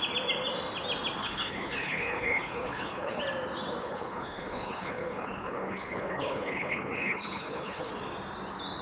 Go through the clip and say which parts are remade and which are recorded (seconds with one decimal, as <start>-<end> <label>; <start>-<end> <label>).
0.0-1.2 recorded; 1.2-3.2 remade; 3.2-3.8 recorded; 3.8-7.9 remade; 7.9-8.8 recorded